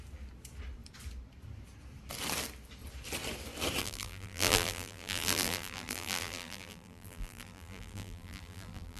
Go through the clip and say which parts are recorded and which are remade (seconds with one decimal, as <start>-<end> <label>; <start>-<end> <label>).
0.0-3.8 recorded; 3.8-9.0 remade